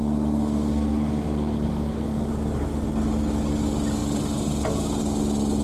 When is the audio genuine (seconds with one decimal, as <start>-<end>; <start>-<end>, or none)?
2.3-5.6